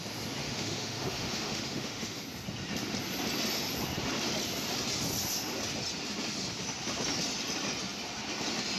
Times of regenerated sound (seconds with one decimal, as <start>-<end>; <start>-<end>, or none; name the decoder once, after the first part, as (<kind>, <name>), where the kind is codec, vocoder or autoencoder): 0.4-2.2 (autoencoder, DAC-VAE)